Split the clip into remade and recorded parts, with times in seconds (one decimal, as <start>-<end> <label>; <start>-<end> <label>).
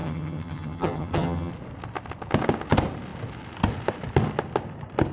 0.0-1.5 remade; 1.5-5.1 recorded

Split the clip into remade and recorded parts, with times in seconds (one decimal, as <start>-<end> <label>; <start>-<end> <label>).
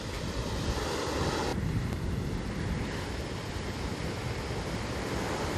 0.0-1.5 remade; 1.5-2.8 recorded; 2.8-4.0 remade; 4.0-5.1 recorded; 5.1-5.6 remade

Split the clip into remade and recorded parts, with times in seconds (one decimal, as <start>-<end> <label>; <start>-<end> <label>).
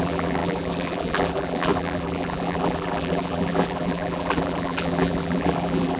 0.0-6.0 remade